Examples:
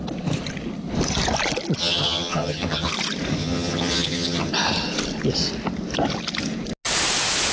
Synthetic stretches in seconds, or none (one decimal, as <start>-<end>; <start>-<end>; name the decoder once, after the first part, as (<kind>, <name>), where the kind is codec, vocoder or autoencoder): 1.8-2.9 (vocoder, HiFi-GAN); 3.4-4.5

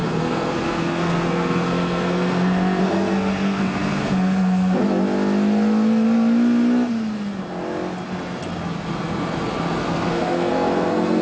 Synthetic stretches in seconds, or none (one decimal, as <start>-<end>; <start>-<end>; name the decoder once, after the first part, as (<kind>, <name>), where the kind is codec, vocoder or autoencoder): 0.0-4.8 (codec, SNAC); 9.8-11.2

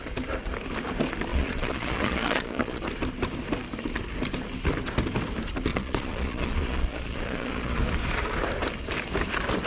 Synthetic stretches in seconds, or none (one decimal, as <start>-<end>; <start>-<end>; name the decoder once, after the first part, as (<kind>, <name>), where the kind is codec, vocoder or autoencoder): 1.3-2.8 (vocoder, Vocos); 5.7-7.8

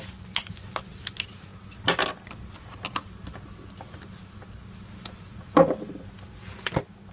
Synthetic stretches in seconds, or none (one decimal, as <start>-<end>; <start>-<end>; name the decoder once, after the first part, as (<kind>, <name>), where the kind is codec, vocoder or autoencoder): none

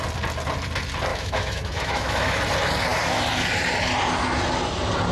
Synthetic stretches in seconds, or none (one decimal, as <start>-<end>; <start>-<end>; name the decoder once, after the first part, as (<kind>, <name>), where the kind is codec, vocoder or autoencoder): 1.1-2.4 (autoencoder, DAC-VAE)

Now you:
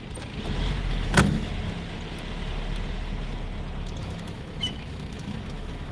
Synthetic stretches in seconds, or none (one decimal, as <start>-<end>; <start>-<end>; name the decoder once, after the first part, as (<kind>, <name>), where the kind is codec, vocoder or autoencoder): 0.9-1.5 (autoencoder, DAC-VAE); 4.0-5.9